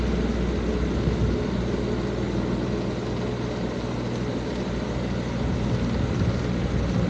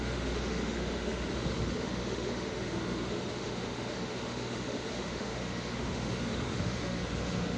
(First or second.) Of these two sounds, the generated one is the second